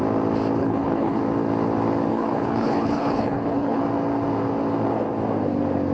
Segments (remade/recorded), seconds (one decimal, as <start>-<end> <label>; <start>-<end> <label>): 0.0-0.6 recorded; 0.6-1.2 remade; 1.2-2.1 recorded; 2.1-3.8 remade; 3.8-5.9 recorded